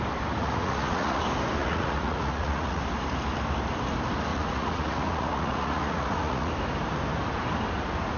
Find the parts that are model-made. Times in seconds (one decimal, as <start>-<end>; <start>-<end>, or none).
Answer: 0.4-1.2; 1.6-2.8; 4.3-6.5